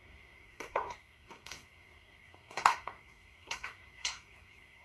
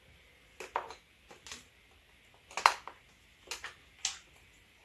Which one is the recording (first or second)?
second